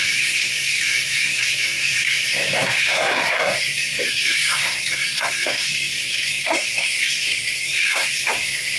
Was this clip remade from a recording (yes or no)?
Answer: yes